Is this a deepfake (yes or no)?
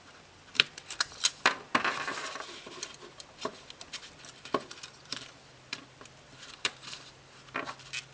yes